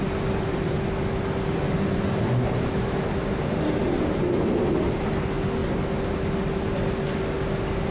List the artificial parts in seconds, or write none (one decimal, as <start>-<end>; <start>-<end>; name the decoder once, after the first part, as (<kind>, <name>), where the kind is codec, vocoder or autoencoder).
none